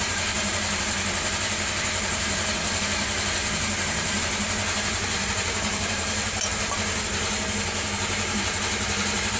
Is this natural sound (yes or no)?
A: no